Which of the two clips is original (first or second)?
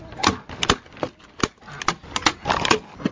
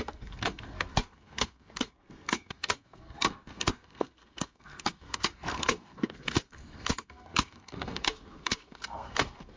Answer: first